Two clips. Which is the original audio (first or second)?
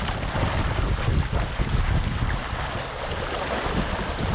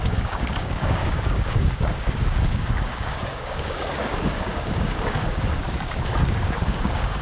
first